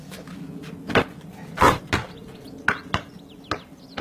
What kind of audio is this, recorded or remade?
recorded